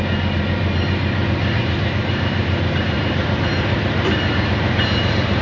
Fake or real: fake